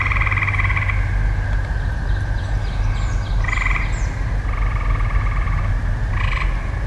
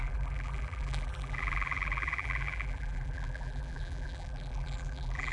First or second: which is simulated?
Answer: second